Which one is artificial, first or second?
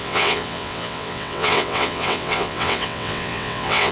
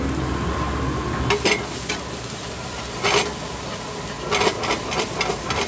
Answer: first